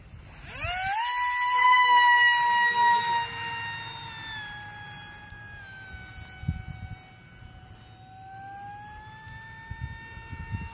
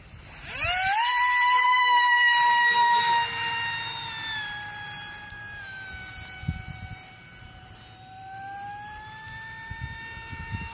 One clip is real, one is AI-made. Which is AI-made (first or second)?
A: second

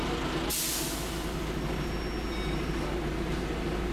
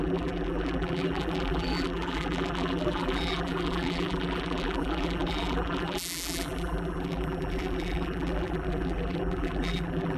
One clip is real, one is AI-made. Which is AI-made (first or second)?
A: second